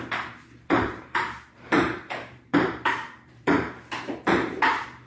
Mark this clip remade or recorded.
remade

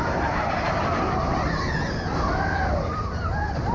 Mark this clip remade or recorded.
recorded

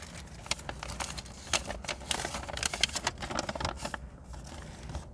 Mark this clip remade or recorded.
recorded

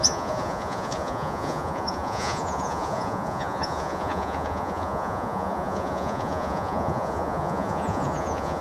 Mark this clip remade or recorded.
remade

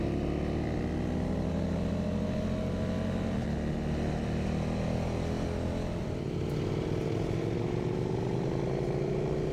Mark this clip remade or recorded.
recorded